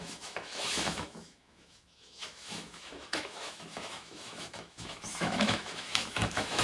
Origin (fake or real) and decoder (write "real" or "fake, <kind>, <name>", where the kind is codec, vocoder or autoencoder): fake, autoencoder, DAC-VAE